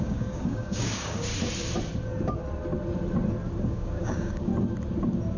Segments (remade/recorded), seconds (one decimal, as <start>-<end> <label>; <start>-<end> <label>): 0.0-1.3 remade; 1.3-3.6 recorded; 3.6-4.5 remade; 4.5-5.4 recorded